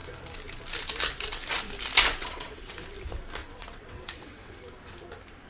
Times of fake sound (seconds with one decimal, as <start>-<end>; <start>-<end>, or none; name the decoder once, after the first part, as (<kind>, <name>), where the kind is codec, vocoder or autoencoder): 2.2-2.7 (vocoder, WaveNeXt); 3.4-4.6

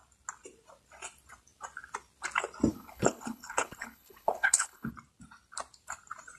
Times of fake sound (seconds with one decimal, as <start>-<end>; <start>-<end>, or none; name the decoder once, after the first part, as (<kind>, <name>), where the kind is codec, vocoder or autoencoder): 2.7-4.9 (codec, HILCodec)

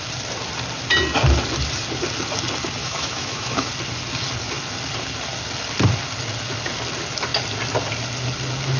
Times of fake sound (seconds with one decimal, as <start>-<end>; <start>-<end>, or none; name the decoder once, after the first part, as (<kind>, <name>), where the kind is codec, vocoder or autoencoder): 2.8-3.7 (autoencoder, DAC-VAE)

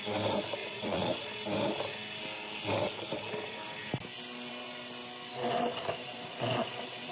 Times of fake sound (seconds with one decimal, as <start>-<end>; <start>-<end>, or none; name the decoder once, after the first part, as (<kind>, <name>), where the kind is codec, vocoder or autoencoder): 0.6-1.2 (vocoder, Vocos)

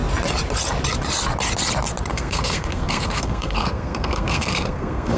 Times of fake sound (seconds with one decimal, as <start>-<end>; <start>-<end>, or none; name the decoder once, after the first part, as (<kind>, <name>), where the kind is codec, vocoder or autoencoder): 2.1-5.2 (codec, SNAC)

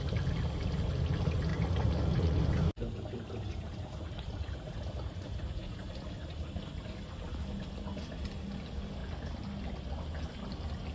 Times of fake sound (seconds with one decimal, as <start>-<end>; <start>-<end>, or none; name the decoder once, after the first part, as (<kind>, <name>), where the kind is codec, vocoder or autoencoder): 1.5-2.4 (vocoder, Vocos); 3.5-5.9